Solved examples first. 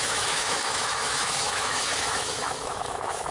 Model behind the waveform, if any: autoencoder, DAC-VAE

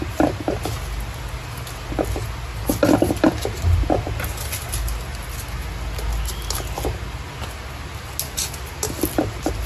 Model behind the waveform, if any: none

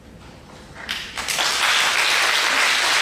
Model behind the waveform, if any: none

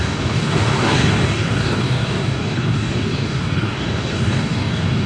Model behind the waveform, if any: codec, DAC